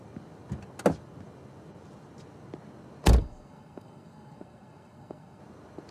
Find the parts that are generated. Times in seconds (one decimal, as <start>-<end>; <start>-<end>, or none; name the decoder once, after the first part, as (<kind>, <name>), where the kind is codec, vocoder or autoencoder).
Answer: 3.2-5.4 (codec, SNAC)